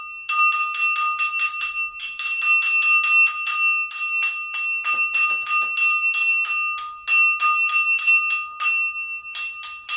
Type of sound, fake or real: real